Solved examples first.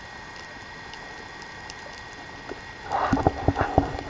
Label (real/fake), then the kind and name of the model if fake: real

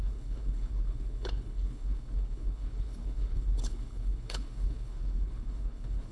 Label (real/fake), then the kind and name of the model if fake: fake, codec, HILCodec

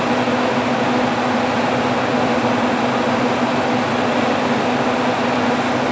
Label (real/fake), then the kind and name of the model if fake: real